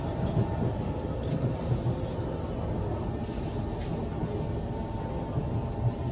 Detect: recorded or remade recorded